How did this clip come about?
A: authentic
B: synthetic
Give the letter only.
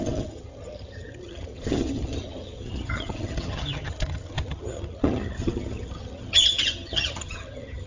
B